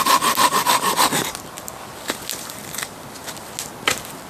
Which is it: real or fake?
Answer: real